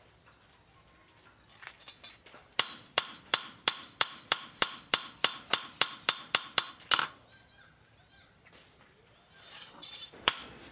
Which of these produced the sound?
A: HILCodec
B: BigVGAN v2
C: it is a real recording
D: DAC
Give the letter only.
B